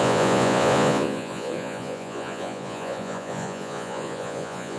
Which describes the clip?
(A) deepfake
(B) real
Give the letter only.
A